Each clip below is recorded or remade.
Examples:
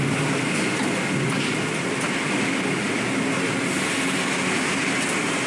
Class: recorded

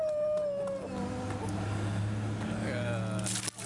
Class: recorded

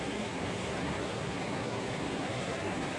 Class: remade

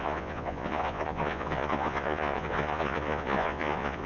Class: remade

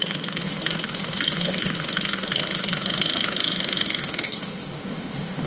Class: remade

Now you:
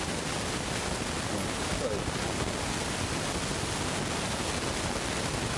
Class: recorded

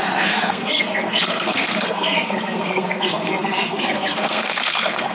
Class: remade